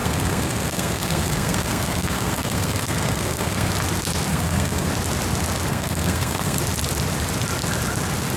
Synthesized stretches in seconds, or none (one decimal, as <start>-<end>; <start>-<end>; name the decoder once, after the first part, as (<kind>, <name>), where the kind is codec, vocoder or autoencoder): 0.0-3.7 (codec, SNAC); 4.3-4.9; 5.7-6.6